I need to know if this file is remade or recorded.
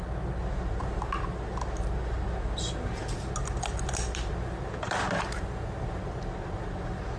recorded